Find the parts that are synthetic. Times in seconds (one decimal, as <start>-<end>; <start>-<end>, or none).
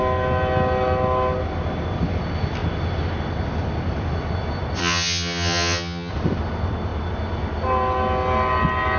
4.8-6.1